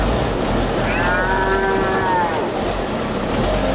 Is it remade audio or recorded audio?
recorded